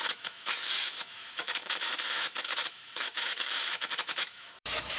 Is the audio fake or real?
fake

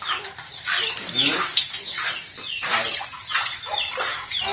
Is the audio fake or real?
real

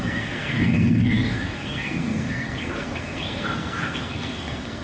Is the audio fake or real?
fake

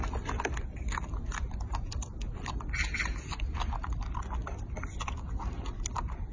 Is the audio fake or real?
real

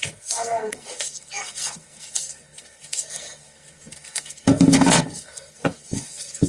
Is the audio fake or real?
fake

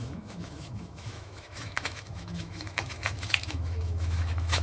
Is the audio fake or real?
fake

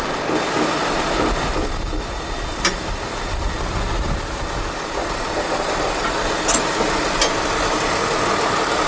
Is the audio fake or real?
real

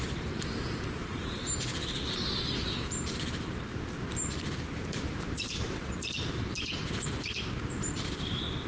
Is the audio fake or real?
fake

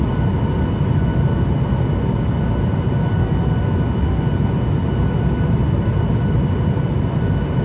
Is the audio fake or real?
real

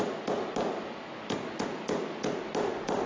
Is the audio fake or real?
real